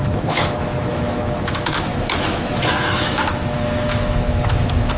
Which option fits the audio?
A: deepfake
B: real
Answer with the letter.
A